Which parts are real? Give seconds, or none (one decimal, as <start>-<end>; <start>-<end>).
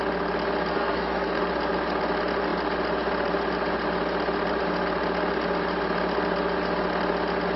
0.0-0.7; 1.4-7.6